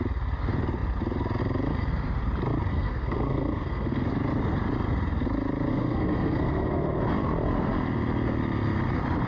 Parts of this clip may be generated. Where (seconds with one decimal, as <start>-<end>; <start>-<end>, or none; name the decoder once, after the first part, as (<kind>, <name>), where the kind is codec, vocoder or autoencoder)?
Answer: 2.7-4.1 (codec, SNAC); 5.7-7.0